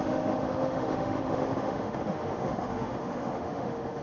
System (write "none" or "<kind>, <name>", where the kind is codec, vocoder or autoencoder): autoencoder, DAC-VAE